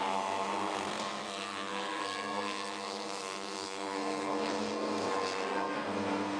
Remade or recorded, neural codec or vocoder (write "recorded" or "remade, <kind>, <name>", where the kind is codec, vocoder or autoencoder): remade, codec, SNAC